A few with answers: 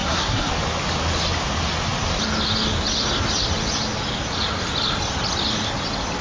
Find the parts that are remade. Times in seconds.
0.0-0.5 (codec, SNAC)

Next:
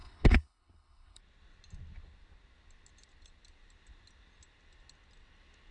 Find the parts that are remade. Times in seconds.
0.0-1.2 (codec, HILCodec)

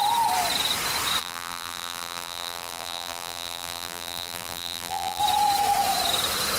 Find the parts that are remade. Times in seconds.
1.2-5.2 (vocoder, BigVGAN v2)

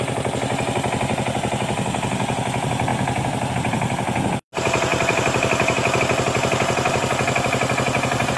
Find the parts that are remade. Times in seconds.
4.9-6.0 (vocoder, BigVGAN v2)

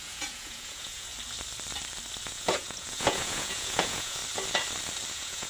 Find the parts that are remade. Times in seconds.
0.0-1.1 (vocoder, Vocos); 2.2-4.2; 5.1-5.5

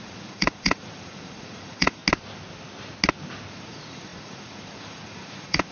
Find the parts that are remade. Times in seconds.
0.0-2.0 (vocoder, Vocos); 3.5-5.7

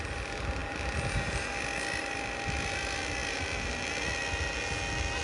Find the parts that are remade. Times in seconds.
none

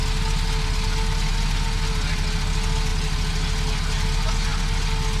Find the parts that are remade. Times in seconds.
none